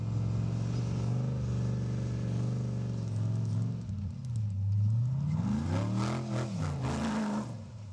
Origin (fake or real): real